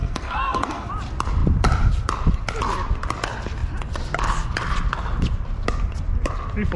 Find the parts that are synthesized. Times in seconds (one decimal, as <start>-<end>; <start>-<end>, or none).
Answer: 0.0-0.9